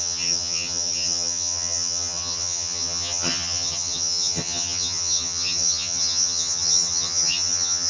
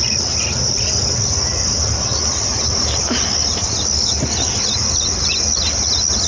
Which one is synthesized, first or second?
first